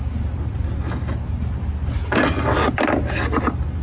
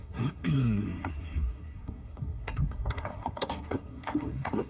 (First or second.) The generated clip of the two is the second